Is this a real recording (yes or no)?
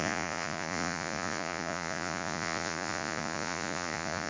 no